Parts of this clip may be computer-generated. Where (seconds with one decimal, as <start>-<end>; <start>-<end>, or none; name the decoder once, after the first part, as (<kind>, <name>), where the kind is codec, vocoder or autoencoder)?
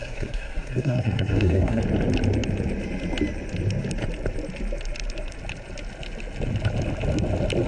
0.0-1.8 (codec, SNAC)